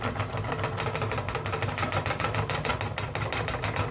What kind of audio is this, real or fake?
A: real